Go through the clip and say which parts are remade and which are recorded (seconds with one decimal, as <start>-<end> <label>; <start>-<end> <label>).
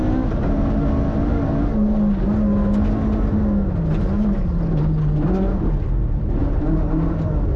0.0-6.4 recorded; 6.4-6.9 remade; 6.9-7.6 recorded